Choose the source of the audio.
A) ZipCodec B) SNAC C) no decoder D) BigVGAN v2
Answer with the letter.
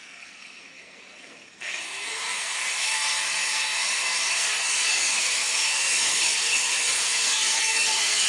B